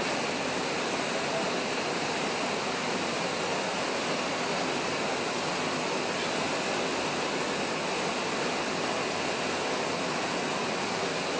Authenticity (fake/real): real